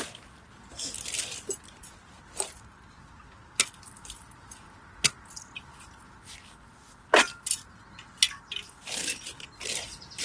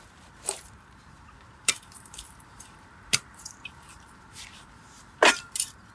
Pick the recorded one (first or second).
first